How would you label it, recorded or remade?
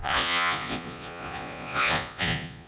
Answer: remade